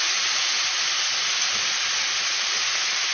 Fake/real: real